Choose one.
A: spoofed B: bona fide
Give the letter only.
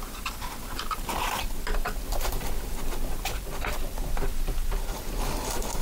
B